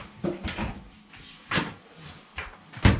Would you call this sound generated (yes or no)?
no